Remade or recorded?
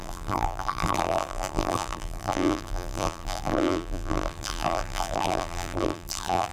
remade